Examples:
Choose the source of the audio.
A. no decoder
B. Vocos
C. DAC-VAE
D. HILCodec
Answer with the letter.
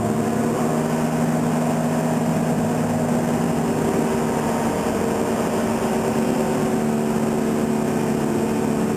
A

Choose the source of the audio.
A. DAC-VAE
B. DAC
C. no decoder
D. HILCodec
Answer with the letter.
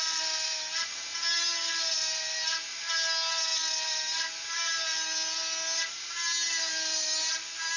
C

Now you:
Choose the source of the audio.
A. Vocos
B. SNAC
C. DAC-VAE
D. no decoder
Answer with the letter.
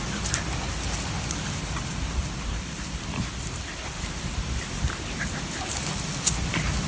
D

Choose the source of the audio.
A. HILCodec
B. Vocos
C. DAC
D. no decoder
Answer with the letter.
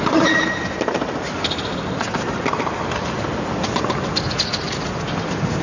D